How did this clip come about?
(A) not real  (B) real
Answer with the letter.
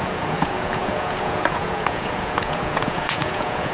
A